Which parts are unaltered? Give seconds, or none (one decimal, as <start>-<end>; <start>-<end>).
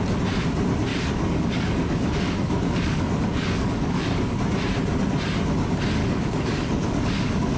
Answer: 0.0-0.9; 4.3-6.0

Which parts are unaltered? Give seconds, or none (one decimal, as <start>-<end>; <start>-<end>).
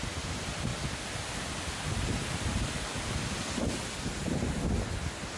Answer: 0.0-5.4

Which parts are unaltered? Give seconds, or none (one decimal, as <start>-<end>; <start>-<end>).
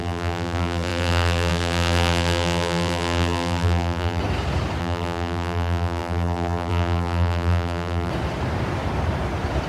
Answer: 4.2-4.8; 8.1-9.7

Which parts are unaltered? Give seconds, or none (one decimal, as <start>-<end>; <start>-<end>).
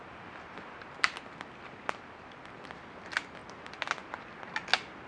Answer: 0.0-5.1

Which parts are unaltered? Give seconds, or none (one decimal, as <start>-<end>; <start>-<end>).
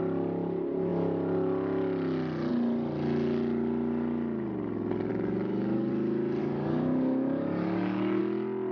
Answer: 0.0-5.1; 5.9-6.4; 8.2-8.7